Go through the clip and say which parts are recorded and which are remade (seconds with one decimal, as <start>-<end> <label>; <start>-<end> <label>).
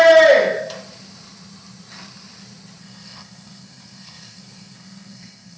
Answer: 0.0-2.8 recorded; 2.8-5.6 remade